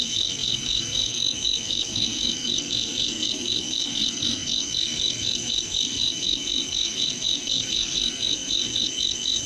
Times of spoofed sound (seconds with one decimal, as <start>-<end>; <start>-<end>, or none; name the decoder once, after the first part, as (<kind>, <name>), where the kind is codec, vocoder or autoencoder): 0.0-9.5 (codec, SNAC)